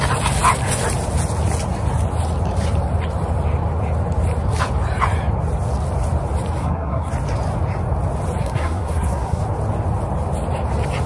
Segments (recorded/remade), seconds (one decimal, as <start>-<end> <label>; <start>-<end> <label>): 0.0-6.6 recorded; 6.6-7.1 remade; 7.1-8.4 recorded; 8.4-9.4 remade; 9.4-11.1 recorded